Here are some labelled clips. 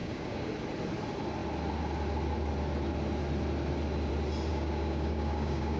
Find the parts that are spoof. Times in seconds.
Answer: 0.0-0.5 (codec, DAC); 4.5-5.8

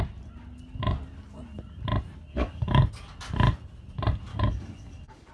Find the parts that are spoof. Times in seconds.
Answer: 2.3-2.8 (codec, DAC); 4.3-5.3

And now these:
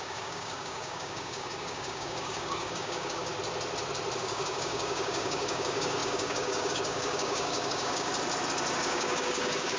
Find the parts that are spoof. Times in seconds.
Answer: 0.0-3.3 (codec, DAC); 4.2-8.1; 8.8-9.8

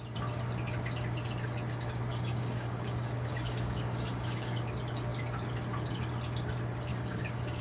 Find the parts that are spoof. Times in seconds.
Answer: 2.1-4.6 (codec, DAC); 6.9-7.6

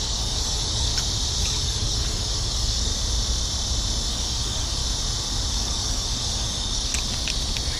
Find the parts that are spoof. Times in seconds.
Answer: 0.0-0.9 (codec, DAC); 1.4-2.9; 4.1-4.8; 5.5-6.9

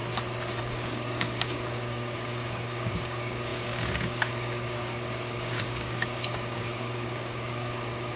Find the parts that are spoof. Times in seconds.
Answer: 0.6-8.2 (codec, DAC)

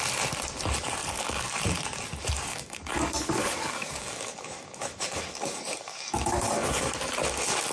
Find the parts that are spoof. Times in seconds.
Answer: 1.0-1.6 (codec, DAC); 2.5-6.9

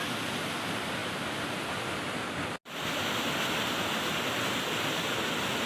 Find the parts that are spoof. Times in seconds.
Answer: none